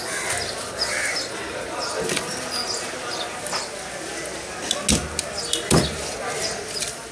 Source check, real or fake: real